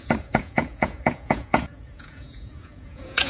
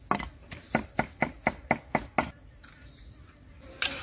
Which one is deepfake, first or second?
first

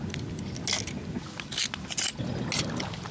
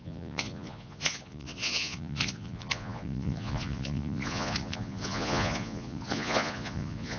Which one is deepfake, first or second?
second